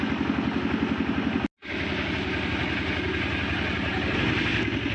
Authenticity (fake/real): real